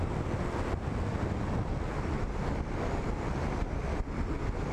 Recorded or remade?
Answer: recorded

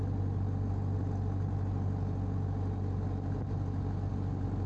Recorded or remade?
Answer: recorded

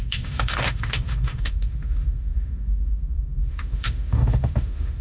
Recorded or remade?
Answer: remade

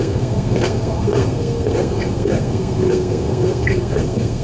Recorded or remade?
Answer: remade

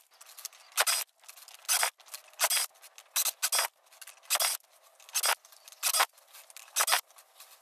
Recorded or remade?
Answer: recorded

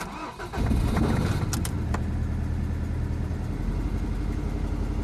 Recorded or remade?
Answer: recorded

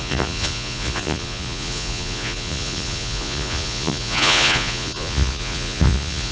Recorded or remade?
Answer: remade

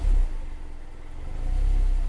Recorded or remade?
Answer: recorded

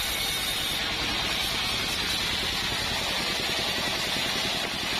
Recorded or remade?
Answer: recorded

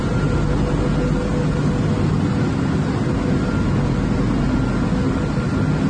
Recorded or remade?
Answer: recorded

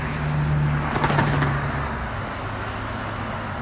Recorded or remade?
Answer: recorded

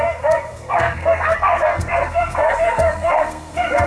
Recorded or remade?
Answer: remade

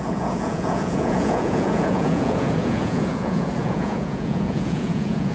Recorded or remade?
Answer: remade